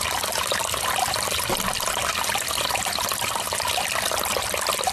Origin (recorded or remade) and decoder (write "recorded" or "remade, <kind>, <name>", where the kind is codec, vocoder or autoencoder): recorded